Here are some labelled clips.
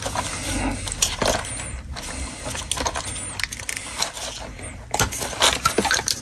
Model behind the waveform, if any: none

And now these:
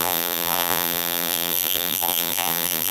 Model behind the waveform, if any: vocoder, BigVGAN v2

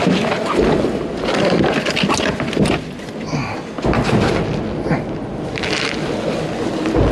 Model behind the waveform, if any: none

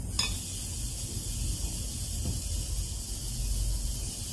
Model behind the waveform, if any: none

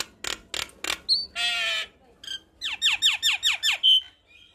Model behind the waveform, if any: none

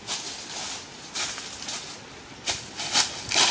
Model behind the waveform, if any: none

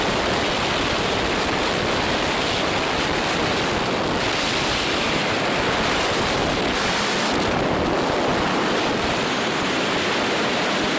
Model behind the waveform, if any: none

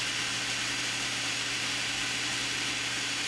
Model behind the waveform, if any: none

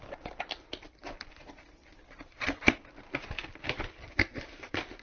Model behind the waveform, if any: vocoder, BigVGAN v2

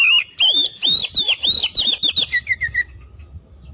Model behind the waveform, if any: none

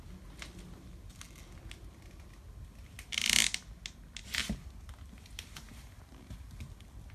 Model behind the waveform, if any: none